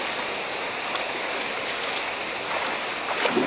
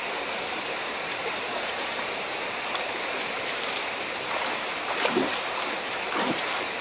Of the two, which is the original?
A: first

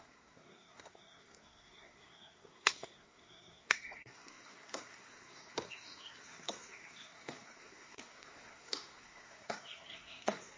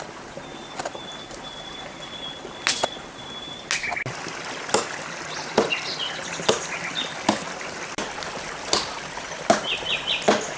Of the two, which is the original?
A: second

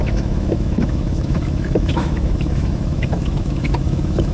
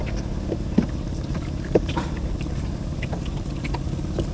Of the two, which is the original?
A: second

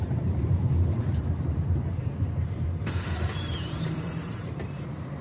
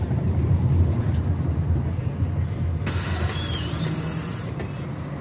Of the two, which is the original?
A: second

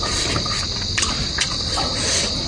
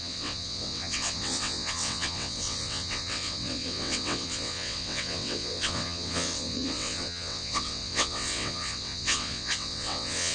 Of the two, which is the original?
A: first